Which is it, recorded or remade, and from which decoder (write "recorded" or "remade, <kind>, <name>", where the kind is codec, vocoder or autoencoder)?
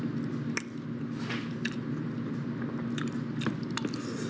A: recorded